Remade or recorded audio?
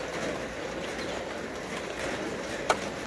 recorded